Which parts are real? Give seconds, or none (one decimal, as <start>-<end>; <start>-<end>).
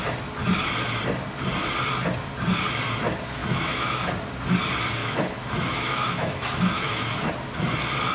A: 0.0-3.4; 4.1-5.0; 7.3-8.1